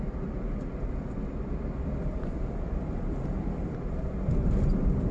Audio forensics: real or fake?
real